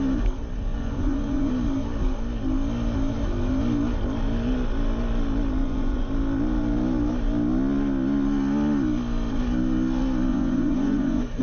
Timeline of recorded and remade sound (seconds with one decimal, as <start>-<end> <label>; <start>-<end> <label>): 0.0-0.7 recorded; 0.7-1.5 remade; 1.5-5.6 recorded; 5.6-6.1 remade; 6.1-10.3 recorded; 10.3-11.4 remade